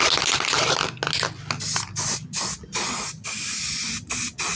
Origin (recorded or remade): recorded